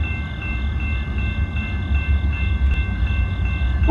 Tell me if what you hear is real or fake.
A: real